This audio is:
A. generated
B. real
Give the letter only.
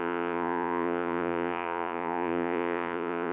A